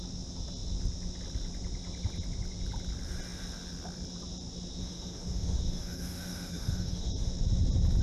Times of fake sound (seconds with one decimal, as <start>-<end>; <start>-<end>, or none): 4.8-7.3

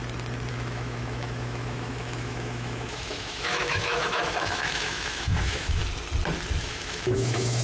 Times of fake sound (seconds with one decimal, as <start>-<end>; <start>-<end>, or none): 0.5-5.8; 6.6-7.6